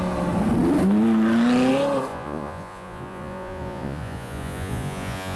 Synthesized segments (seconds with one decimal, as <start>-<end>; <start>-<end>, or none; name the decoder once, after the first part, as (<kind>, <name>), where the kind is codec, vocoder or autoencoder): 2.1-5.4 (vocoder, Vocos)